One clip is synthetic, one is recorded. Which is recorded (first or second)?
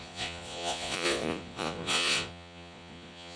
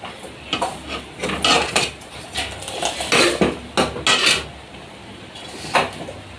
second